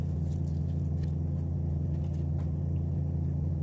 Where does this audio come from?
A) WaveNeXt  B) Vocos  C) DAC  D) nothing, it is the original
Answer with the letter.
D